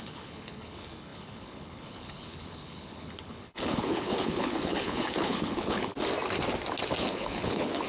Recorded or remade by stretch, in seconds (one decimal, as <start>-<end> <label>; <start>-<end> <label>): 0.0-5.9 remade; 5.9-7.0 recorded; 7.0-7.9 remade

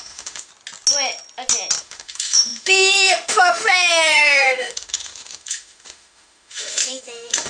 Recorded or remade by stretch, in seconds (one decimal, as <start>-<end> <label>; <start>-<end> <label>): 0.0-0.5 remade; 0.5-1.8 recorded; 1.8-7.5 remade

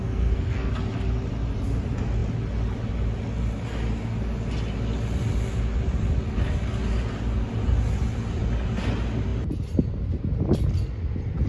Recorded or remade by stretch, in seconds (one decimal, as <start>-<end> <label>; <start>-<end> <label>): 0.0-0.7 remade; 0.7-11.5 recorded

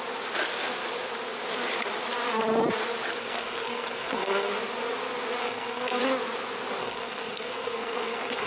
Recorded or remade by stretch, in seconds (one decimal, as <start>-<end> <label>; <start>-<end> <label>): 0.0-3.2 recorded; 3.2-4.5 remade; 4.5-5.4 recorded; 5.4-6.0 remade; 6.0-6.8 recorded; 6.8-8.5 remade

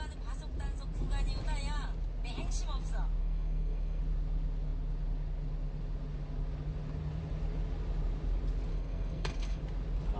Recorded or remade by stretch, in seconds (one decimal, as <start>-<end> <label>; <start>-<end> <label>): 0.0-3.2 recorded; 3.2-4.0 remade; 4.0-8.7 recorded; 8.7-9.6 remade; 9.6-10.2 recorded

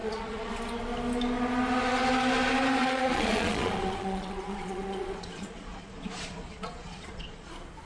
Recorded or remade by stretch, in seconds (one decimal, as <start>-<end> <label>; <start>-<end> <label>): 0.0-0.5 remade; 0.5-2.8 recorded; 2.8-7.5 remade; 7.5-7.9 recorded

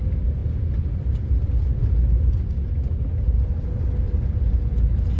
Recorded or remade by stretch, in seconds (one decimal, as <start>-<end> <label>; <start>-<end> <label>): 0.0-5.2 recorded